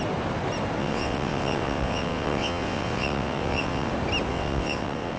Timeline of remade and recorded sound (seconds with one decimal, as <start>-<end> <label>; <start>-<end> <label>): 0.0-0.8 recorded; 0.8-3.9 remade; 3.9-4.3 recorded; 4.3-5.2 remade